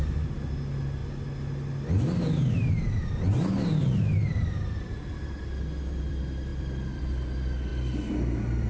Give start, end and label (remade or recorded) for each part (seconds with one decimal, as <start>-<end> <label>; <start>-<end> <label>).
0.0-6.5 recorded; 6.5-7.0 remade; 7.0-7.7 recorded; 7.7-8.7 remade